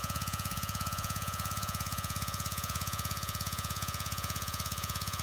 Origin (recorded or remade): remade